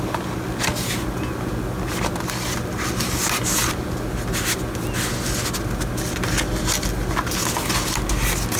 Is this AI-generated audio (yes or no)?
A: no